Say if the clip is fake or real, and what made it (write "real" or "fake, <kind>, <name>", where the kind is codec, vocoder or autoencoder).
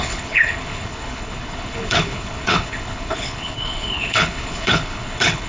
fake, codec, HILCodec